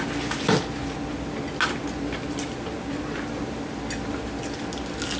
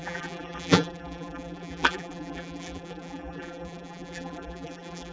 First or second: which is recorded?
first